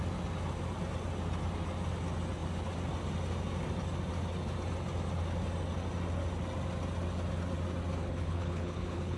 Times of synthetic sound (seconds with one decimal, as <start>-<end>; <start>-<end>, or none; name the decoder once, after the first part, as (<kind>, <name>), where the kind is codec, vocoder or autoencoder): 8.0-9.2 (codec, HILCodec)